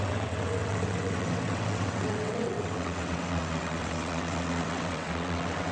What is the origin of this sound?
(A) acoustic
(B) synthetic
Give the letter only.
B